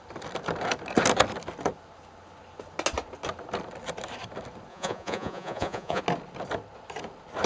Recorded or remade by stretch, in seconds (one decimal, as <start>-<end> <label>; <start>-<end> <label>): 0.0-4.7 recorded; 4.7-6.0 remade; 6.0-7.5 recorded